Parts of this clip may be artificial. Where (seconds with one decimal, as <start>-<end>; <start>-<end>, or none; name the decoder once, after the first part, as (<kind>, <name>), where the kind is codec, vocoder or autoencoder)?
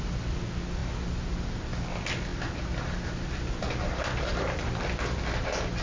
none